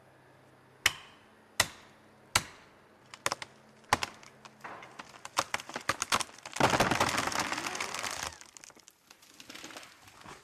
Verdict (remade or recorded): recorded